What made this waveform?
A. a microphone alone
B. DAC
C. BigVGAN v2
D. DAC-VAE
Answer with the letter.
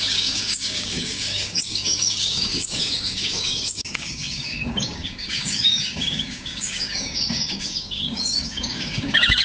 B